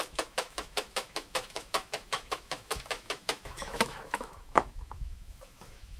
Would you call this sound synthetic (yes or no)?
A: yes